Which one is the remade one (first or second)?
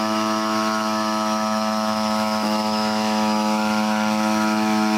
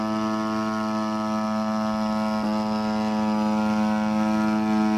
first